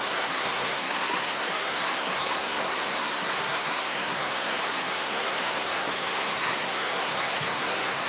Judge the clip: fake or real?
fake